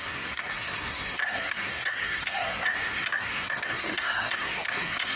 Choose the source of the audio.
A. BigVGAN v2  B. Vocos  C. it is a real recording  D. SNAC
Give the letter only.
D